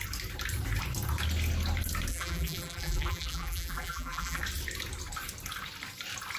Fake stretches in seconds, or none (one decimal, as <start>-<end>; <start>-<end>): 2.1-4.4